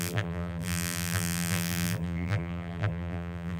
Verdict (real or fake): fake